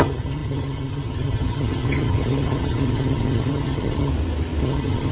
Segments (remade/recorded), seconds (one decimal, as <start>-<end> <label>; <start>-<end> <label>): 0.0-4.1 remade; 4.1-4.6 recorded; 4.6-5.1 remade